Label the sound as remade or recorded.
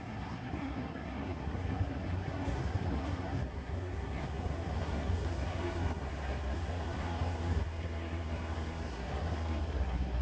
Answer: remade